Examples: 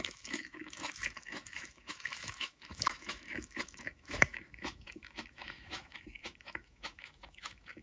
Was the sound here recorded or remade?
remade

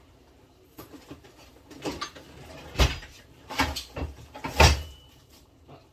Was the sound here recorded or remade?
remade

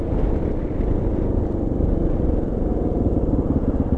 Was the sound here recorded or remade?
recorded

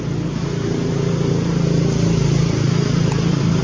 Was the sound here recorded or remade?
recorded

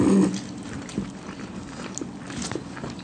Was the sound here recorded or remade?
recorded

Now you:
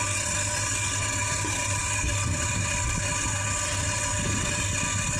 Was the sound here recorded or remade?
recorded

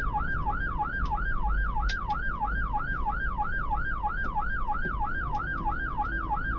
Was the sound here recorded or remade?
recorded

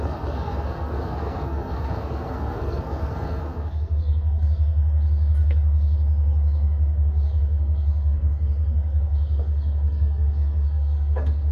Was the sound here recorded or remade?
remade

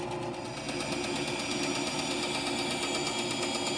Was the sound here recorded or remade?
recorded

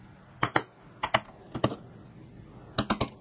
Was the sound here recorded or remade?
recorded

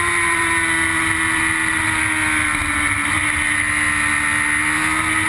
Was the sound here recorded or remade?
recorded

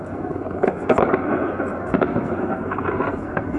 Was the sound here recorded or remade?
remade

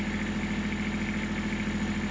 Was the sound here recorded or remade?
recorded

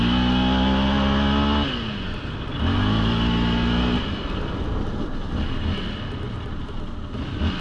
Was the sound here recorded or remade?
recorded